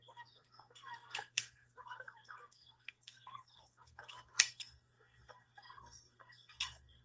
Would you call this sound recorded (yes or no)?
no